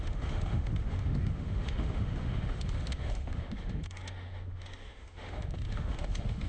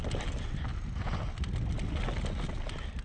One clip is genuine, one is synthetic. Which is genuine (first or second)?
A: second